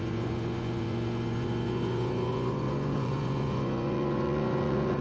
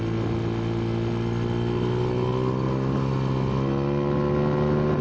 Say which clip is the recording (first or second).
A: second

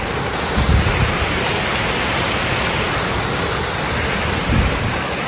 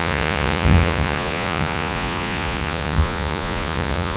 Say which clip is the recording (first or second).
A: first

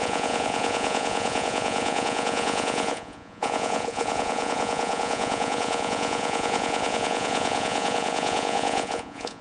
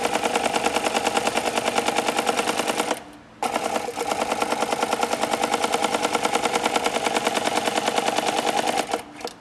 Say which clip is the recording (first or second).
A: second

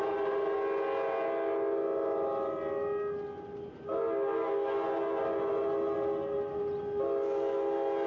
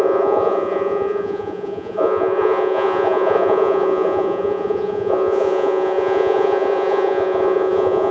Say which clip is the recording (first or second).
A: first